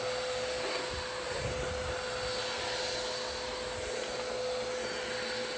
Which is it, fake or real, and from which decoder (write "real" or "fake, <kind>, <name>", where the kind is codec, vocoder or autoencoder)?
real